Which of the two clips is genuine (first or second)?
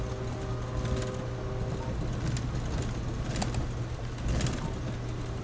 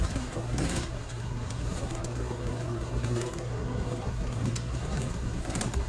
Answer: first